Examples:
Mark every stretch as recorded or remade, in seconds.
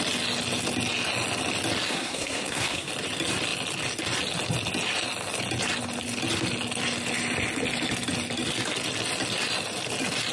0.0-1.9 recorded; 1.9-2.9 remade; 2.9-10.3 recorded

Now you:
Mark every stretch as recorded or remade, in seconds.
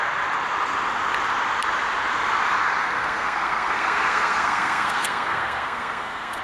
0.0-2.8 recorded; 2.8-6.4 remade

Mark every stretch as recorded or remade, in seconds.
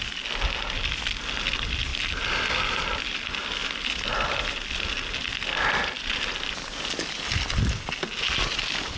0.0-9.0 recorded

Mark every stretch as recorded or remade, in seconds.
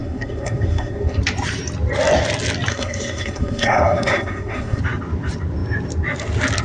0.0-1.2 remade; 1.2-2.7 recorded; 2.7-4.8 remade; 4.8-6.6 recorded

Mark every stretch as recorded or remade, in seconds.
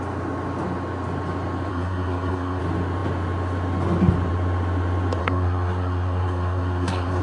0.0-1.7 recorded; 1.7-2.6 remade; 2.6-5.2 recorded; 5.2-7.2 remade